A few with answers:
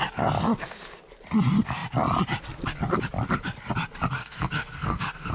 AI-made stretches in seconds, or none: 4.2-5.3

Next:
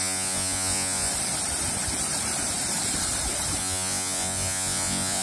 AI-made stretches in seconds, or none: 0.0-1.1; 3.6-5.2

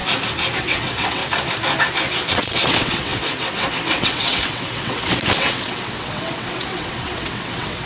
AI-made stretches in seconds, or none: 0.6-1.2; 2.3-7.9

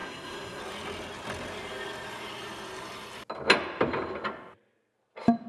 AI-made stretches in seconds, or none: 0.0-0.6

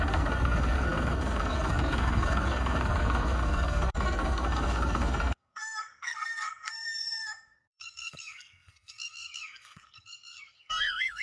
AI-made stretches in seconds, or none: 0.0-11.2